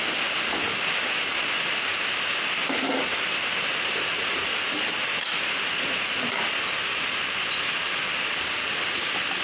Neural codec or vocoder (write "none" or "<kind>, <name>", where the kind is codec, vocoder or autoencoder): none